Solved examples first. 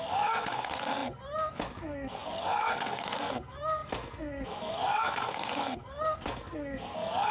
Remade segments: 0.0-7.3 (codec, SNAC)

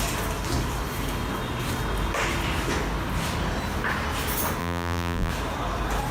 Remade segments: 4.6-5.3 (vocoder, BigVGAN v2)

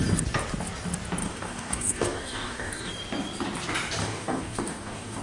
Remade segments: 1.2-2.9 (codec, DAC); 4.0-5.2

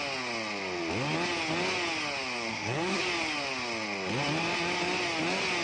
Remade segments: 2.5-3.0 (codec, SNAC)

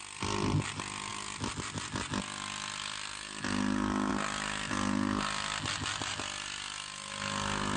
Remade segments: none